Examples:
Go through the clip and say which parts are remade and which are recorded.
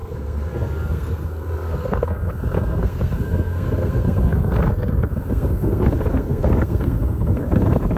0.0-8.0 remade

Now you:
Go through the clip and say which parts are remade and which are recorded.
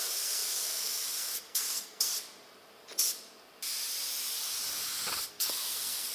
0.0-2.1 remade; 2.1-5.3 recorded; 5.3-6.1 remade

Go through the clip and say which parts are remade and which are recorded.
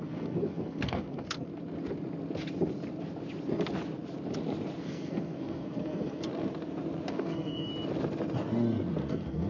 0.0-1.5 remade; 1.5-4.8 recorded; 4.8-6.3 remade; 6.3-7.1 recorded; 7.1-7.7 remade; 7.7-9.1 recorded; 9.1-9.5 remade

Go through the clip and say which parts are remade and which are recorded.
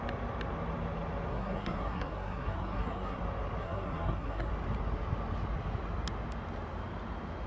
0.0-1.3 recorded; 1.3-3.2 remade; 3.2-3.6 recorded; 3.6-4.5 remade; 4.5-7.5 recorded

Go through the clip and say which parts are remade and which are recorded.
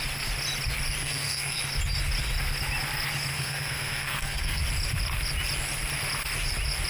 0.0-1.0 recorded; 1.0-1.6 remade; 1.6-3.3 recorded; 3.3-4.6 remade; 4.6-6.9 recorded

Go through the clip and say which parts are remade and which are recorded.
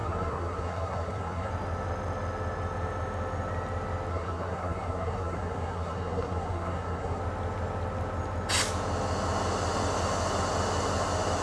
0.0-1.5 remade; 1.5-4.1 recorded; 4.1-7.2 remade; 7.2-11.4 recorded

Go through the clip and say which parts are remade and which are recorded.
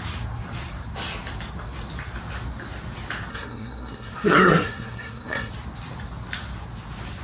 0.0-3.3 recorded; 3.3-5.5 remade; 5.5-7.2 recorded